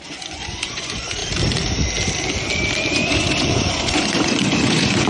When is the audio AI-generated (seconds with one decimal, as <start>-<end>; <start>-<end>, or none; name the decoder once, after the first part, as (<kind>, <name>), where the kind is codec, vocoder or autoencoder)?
0.0-1.2 (vocoder, Vocos); 2.9-5.1